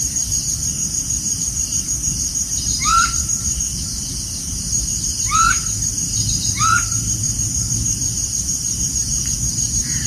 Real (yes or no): no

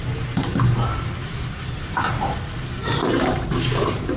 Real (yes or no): no